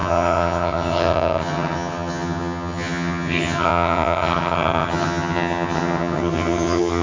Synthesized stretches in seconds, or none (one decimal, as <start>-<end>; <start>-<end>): 0.0-7.0